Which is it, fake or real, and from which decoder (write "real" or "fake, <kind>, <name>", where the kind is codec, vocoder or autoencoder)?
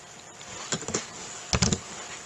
real